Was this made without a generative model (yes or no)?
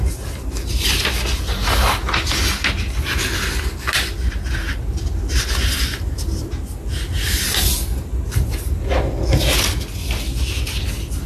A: yes